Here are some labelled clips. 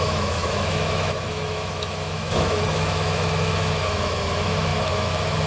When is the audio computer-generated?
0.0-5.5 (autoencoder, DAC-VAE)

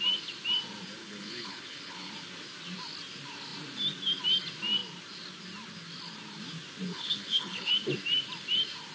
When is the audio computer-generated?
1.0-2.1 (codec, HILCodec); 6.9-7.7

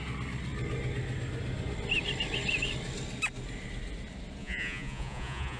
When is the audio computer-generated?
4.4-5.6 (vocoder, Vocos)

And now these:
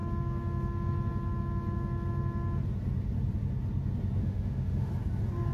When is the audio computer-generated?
4.2-4.9 (autoencoder, DAC-VAE)

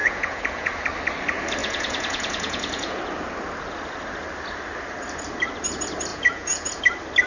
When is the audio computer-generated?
0.0-0.7 (vocoder, Vocos); 1.6-3.0; 6.1-6.8

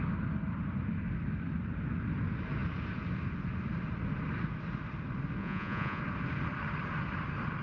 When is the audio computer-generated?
5.4-6.0 (vocoder, Vocos)

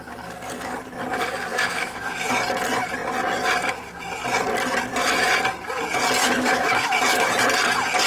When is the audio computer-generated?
1.5-2.3 (autoencoder, DAC-VAE); 6.2-7.3

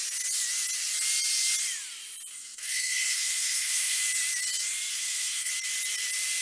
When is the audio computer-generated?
2.3-4.0 (codec, SNAC); 4.9-5.5